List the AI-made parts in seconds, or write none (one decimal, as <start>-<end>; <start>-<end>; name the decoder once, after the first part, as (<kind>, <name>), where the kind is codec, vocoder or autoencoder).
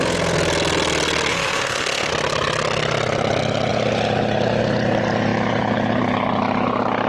1.3-2.1 (autoencoder, DAC-VAE)